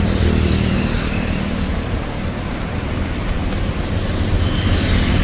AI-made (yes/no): yes